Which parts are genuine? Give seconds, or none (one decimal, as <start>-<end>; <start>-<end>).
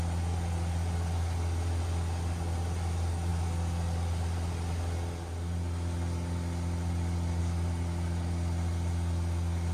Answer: 0.0-9.7